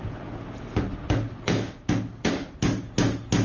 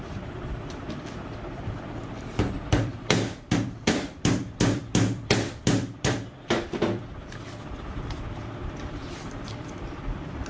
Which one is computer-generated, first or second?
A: second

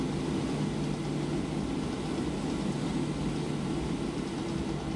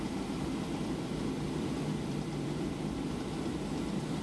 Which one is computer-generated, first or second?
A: second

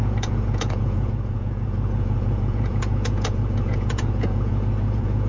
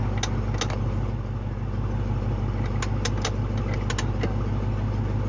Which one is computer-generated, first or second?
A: first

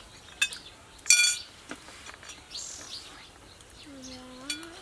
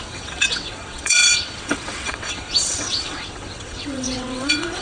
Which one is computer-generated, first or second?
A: second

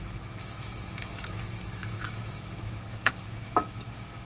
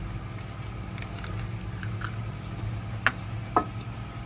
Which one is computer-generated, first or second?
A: first